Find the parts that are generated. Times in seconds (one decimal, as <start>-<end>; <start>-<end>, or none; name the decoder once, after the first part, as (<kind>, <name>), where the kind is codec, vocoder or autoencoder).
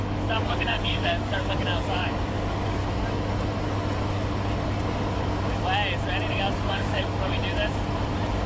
0.0-2.8 (codec, DAC); 6.3-7.4